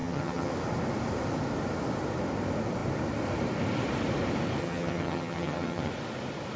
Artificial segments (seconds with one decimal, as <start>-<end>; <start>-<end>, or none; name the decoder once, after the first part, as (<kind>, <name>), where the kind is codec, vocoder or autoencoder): 0.0-0.5 (vocoder, HiFi-GAN); 4.6-5.9